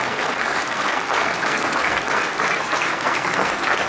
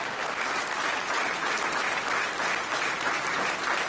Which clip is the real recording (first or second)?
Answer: second